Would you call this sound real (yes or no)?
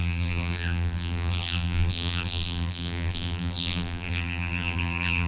no